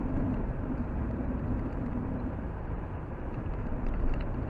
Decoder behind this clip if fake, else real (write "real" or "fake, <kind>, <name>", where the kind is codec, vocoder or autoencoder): fake, vocoder, BigVGAN v2